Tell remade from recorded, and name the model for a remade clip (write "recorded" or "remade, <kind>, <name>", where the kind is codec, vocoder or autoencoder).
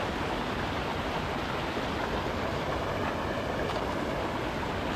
recorded